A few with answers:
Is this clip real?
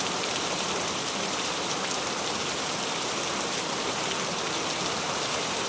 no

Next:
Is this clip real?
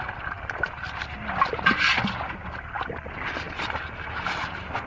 yes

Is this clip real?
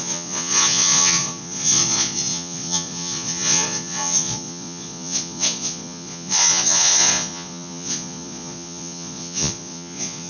no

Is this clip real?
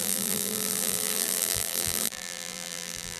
no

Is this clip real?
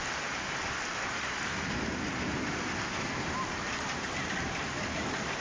yes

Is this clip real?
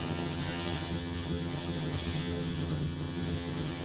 no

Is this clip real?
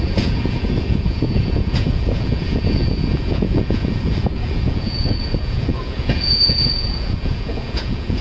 no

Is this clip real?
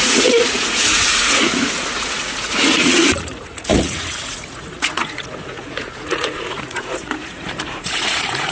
no